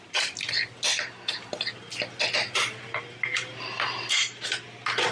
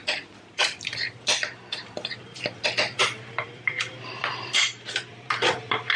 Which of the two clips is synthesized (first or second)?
second